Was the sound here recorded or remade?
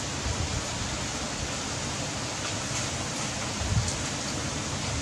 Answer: recorded